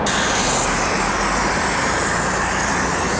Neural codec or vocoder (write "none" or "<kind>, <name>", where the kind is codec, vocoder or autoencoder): none